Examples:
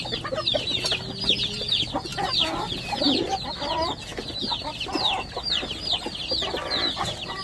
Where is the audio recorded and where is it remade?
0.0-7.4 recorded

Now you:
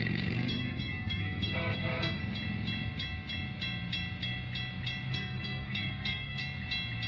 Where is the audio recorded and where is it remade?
0.0-2.2 remade; 2.2-5.1 recorded; 5.1-6.4 remade; 6.4-7.1 recorded